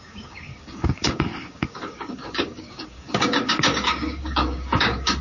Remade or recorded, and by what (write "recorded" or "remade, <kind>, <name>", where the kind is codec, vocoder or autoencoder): remade, codec, DAC